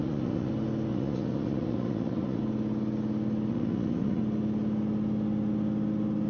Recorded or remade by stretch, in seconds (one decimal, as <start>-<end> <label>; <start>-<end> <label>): 0.0-0.5 remade; 0.5-0.9 recorded; 0.9-2.4 remade; 2.4-3.5 recorded; 3.5-4.2 remade; 4.2-6.3 recorded